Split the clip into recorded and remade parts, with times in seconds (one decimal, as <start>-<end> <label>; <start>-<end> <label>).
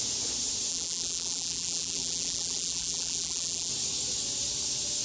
0.0-0.7 recorded; 0.7-3.7 remade; 3.7-5.0 recorded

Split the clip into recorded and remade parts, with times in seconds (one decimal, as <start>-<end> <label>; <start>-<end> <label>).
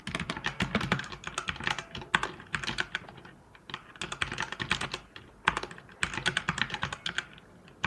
0.0-7.9 recorded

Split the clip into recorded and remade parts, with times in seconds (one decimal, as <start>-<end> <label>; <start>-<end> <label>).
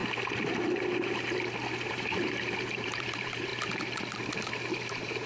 0.0-1.9 recorded; 1.9-3.5 remade; 3.5-4.7 recorded; 4.7-5.3 remade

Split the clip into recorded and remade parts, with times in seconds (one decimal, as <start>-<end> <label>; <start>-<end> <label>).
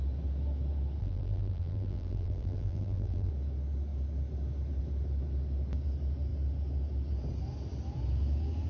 0.0-1.0 recorded; 1.0-3.3 remade; 3.3-8.7 recorded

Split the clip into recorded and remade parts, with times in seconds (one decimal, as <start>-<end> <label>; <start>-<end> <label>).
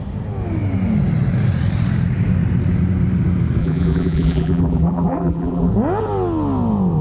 0.0-3.6 recorded; 3.6-5.7 remade; 5.7-7.0 recorded